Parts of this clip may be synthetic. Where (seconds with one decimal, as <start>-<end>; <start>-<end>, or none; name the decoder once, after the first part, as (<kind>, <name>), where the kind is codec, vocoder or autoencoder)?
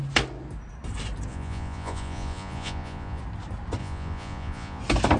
1.3-3.2 (vocoder, Vocos); 3.8-4.8